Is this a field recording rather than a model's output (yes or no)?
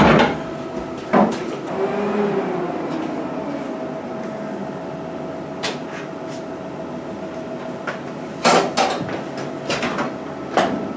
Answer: yes